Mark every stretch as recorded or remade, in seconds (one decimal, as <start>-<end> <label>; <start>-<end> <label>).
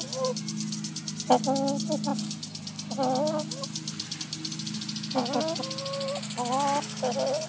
0.0-7.5 recorded